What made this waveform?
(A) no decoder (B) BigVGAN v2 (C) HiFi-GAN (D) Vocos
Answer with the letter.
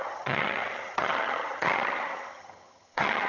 C